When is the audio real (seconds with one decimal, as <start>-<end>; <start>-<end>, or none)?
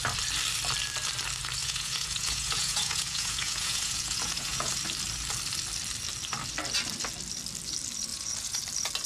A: 0.0-1.6; 4.7-8.1; 8.6-9.1